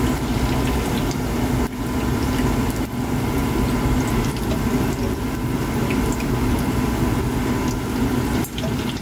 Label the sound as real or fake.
real